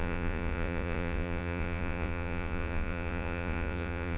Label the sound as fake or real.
fake